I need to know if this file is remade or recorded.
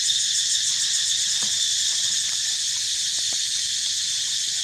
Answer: recorded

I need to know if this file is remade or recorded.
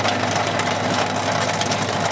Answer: recorded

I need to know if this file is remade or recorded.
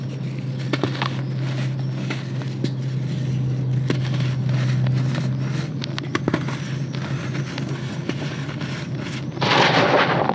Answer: recorded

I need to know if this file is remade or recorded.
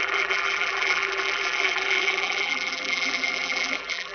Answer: remade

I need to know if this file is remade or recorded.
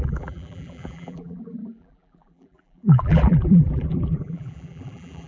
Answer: remade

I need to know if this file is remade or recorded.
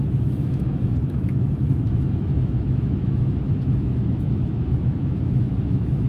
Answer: remade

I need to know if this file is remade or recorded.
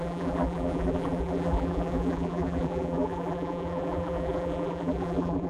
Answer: remade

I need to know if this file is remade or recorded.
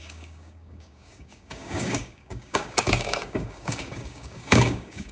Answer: remade